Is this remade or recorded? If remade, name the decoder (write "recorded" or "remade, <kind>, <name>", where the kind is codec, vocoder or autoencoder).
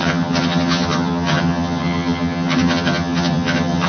remade, vocoder, HiFi-GAN